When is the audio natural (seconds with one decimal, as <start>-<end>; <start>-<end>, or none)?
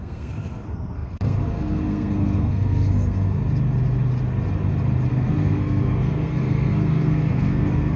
3.4-5.1